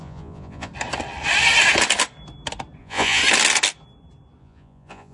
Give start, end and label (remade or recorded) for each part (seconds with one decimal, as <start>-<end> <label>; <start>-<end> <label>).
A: 0.0-0.7 remade; 0.7-2.8 recorded; 2.8-3.2 remade; 3.2-4.4 recorded; 4.4-5.1 remade

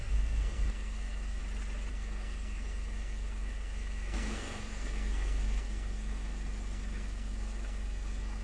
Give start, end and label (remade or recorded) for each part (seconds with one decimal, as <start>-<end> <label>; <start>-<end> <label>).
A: 0.0-1.4 remade; 1.4-1.9 recorded; 1.9-8.4 remade